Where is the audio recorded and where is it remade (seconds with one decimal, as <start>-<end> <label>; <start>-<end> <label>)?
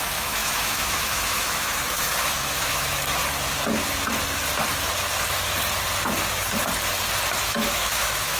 0.0-3.2 remade; 3.2-7.7 recorded; 7.7-8.4 remade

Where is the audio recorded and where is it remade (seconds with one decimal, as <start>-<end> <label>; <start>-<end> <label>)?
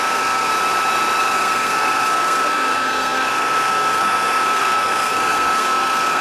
0.0-0.5 remade; 0.5-1.2 recorded; 1.2-6.2 remade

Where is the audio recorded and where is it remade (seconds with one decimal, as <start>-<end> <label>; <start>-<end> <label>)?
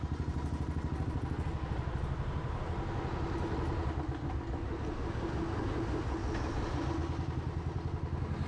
0.0-8.5 recorded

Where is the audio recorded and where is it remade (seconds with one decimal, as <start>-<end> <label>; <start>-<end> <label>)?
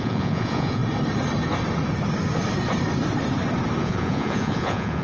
0.0-0.8 remade; 0.8-3.8 recorded; 3.8-5.0 remade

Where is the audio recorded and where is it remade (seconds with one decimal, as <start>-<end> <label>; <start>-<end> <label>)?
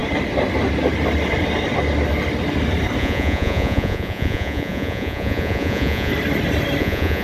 0.0-3.0 recorded; 3.0-6.1 remade; 6.1-6.8 recorded; 6.8-7.2 remade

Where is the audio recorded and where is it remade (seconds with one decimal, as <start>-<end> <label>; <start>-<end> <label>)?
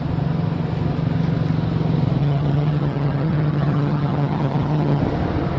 0.0-2.2 recorded; 2.2-5.0 remade; 5.0-5.6 recorded